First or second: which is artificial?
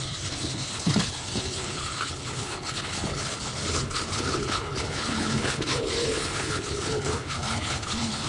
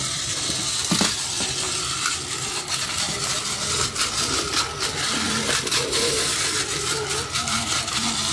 first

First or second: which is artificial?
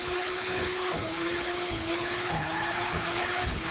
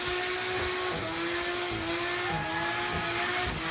first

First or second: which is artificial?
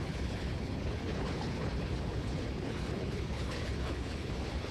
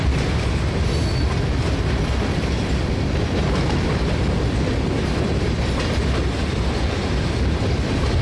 first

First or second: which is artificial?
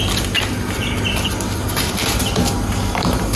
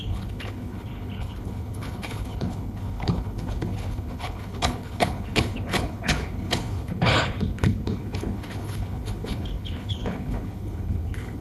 second